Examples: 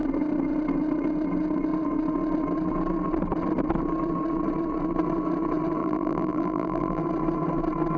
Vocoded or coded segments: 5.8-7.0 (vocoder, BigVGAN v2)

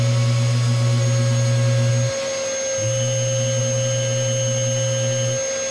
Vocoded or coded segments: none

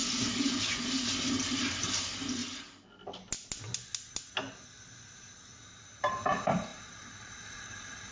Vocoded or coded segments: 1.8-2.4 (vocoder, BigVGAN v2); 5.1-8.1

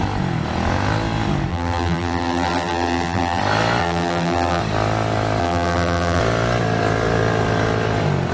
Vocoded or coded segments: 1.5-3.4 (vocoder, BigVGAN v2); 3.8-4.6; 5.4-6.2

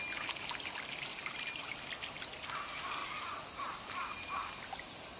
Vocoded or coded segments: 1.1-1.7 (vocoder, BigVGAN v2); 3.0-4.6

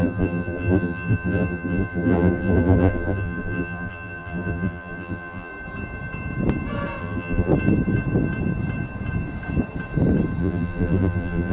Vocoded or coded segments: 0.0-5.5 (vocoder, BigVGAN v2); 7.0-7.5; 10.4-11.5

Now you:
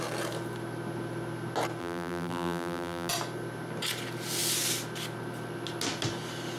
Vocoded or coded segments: 1.8-3.1 (vocoder, BigVGAN v2)

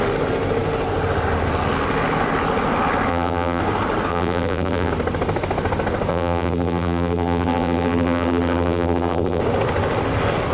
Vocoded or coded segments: 3.1-3.6 (vocoder, BigVGAN v2); 4.1-4.9; 6.1-9.4